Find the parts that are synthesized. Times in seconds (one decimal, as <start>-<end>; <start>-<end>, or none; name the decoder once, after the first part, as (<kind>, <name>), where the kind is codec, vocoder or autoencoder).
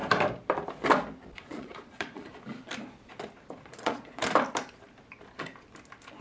1.3-2.3 (vocoder, Vocos); 3.7-4.2